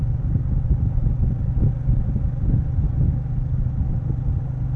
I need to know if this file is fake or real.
real